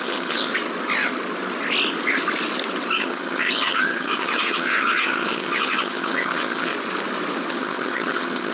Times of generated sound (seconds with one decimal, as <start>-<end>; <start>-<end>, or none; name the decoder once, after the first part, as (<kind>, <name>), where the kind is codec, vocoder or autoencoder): 0.0-0.5 (vocoder, HiFi-GAN); 3.0-6.7; 7.5-8.5